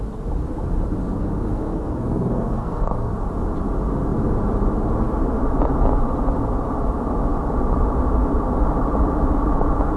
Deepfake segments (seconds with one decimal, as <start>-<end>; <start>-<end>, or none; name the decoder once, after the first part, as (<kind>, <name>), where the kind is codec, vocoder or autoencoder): 1.0-3.1 (codec, SNAC)

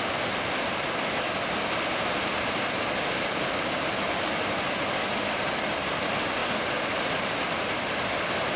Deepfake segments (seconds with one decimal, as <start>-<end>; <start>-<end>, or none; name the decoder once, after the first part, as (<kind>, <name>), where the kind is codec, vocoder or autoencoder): none

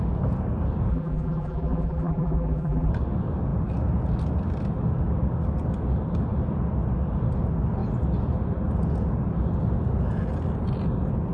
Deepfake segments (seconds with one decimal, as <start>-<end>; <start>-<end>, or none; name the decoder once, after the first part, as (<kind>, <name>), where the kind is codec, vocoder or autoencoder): 0.9-2.9 (vocoder, BigVGAN v2)

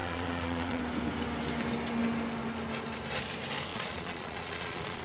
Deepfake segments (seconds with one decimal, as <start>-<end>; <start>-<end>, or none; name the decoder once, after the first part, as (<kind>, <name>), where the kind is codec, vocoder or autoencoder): 0.0-0.8 (vocoder, Vocos); 3.7-5.0

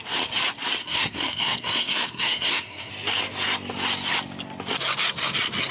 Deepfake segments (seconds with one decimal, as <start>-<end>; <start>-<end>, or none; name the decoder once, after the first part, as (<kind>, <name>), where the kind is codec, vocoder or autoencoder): 0.8-2.9 (codec, SNAC)

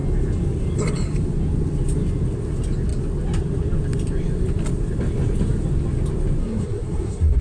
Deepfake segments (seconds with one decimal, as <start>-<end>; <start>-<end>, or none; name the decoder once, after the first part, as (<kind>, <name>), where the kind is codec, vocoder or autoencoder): 6.4-7.4 (codec, SNAC)